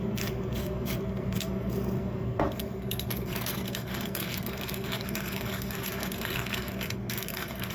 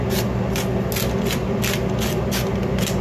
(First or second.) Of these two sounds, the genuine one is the second